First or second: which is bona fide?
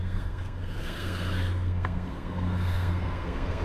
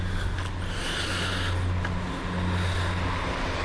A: second